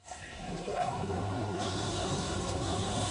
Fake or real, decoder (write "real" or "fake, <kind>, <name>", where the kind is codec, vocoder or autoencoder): fake, codec, SNAC